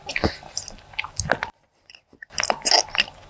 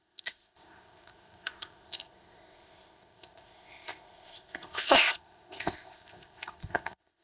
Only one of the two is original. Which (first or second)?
first